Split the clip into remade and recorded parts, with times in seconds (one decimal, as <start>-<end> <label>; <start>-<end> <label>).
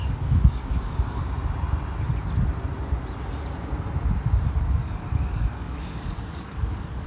0.0-1.2 remade; 1.2-4.6 recorded; 4.6-7.1 remade